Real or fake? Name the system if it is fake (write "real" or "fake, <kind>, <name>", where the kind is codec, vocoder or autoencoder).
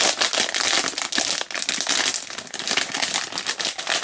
real